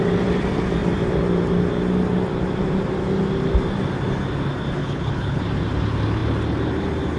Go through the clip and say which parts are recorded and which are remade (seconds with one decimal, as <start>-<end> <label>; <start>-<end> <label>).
0.0-4.8 recorded; 4.8-5.4 remade; 5.4-7.2 recorded